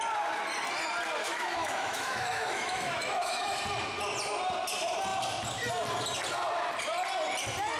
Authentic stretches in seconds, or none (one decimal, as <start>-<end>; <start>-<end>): 0.0-1.2; 3.6-7.8